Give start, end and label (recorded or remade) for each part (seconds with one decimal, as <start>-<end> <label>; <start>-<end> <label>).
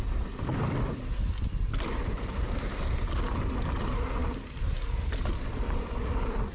0.0-6.5 recorded